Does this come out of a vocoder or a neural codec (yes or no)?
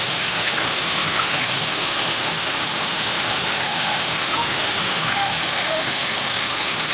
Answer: yes